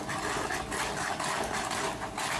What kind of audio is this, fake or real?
fake